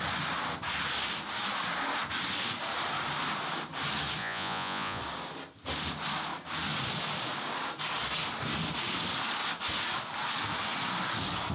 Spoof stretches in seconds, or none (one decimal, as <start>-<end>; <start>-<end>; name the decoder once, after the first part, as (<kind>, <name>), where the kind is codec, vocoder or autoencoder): 4.2-5.0 (vocoder, Vocos)